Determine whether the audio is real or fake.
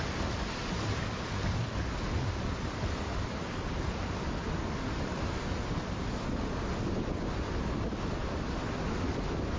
real